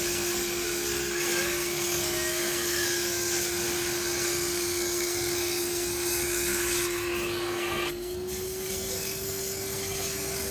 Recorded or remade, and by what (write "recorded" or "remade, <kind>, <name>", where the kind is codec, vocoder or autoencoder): remade, codec, SNAC